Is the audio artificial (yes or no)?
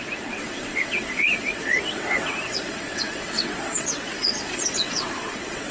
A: yes